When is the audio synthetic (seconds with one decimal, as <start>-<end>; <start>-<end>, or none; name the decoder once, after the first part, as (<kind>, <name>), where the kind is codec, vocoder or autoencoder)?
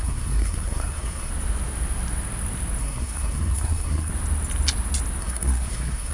0.0-1.3 (codec, SNAC); 2.8-4.1; 5.2-6.1